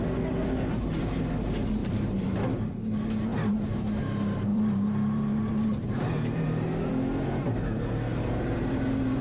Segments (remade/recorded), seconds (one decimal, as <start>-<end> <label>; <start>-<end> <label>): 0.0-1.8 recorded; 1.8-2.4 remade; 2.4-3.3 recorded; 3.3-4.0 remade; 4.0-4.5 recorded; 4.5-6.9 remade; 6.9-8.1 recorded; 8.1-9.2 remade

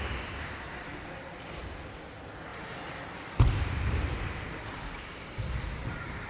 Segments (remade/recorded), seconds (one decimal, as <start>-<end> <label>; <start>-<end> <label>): 0.0-0.9 recorded; 0.9-1.6 remade; 1.6-2.5 recorded; 2.5-6.3 remade

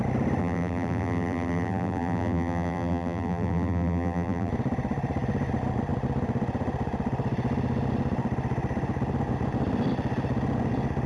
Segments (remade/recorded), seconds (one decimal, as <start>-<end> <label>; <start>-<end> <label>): 0.0-0.4 recorded; 0.4-4.5 remade; 4.5-11.1 recorded

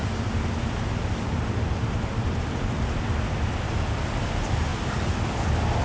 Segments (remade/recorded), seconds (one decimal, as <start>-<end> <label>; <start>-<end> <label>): 0.0-3.5 remade; 3.5-4.7 recorded; 4.7-5.3 remade; 5.3-5.8 recorded

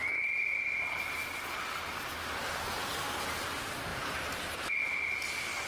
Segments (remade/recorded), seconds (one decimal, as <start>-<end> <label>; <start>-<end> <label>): 0.0-3.9 recorded; 3.9-4.8 remade; 4.8-5.7 recorded

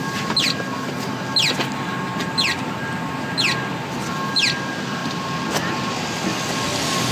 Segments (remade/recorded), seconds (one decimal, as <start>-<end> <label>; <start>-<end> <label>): 0.0-7.1 recorded

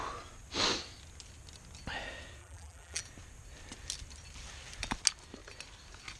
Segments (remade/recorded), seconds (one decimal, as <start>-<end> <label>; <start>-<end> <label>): 0.0-2.4 recorded; 2.4-3.0 remade; 3.0-6.2 recorded

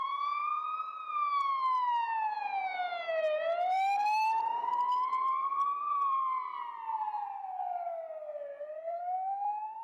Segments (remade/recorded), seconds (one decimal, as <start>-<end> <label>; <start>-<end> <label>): 0.0-9.8 remade